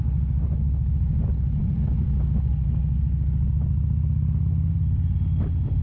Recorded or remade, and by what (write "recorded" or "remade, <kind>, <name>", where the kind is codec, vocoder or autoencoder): recorded